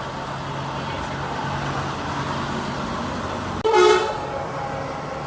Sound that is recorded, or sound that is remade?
recorded